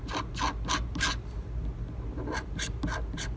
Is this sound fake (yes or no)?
no